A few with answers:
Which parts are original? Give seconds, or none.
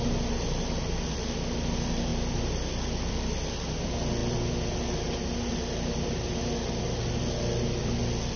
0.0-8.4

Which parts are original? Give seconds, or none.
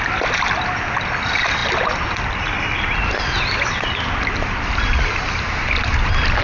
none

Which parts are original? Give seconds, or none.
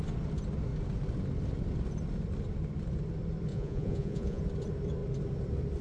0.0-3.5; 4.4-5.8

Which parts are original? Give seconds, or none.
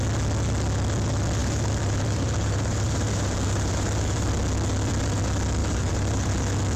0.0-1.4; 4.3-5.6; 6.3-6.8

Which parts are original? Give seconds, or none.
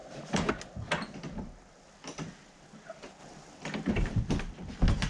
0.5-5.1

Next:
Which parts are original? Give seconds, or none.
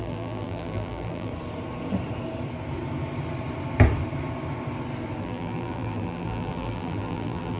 1.3-5.2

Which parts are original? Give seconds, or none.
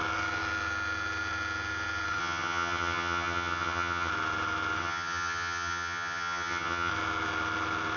0.0-2.2; 4.1-4.8; 6.9-8.0